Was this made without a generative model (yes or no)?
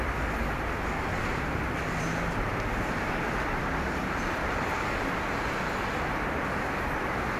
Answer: yes